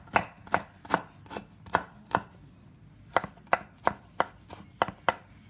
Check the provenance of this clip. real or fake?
real